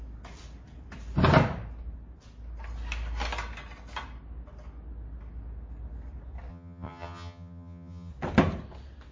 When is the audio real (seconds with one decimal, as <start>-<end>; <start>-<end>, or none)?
0.0-6.5; 8.1-9.1